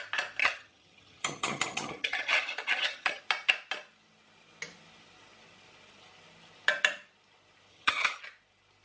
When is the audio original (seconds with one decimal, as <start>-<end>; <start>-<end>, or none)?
0.0-0.4; 3.2-7.7; 8.2-8.8